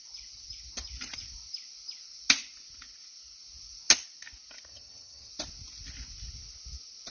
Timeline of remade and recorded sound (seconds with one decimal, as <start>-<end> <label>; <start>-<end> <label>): 0.0-4.7 recorded; 4.7-5.3 remade; 5.3-7.1 recorded